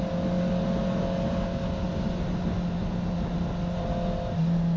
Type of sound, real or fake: real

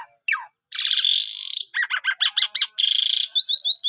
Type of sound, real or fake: real